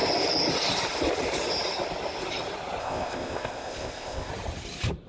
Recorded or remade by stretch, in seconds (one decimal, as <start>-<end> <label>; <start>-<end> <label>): 0.0-2.8 recorded; 2.8-4.3 remade; 4.3-5.1 recorded